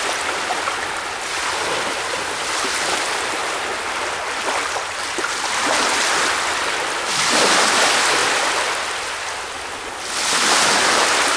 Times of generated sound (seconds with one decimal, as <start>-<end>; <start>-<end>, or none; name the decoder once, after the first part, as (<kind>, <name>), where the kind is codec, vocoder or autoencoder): none